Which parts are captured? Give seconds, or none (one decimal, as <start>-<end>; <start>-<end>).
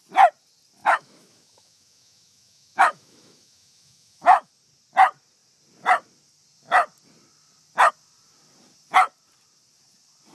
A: 0.0-0.8; 4.5-10.3